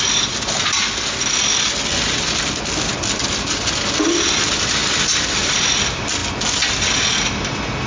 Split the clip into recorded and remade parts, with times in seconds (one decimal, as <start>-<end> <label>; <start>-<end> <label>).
0.0-7.9 recorded